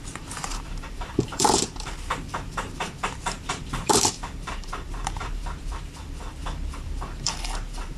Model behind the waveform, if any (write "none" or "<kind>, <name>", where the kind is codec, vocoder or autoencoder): vocoder, BigVGAN v2